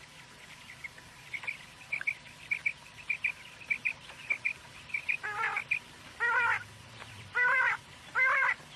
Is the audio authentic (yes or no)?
no